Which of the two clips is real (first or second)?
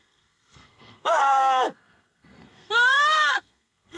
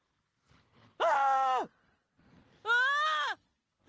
second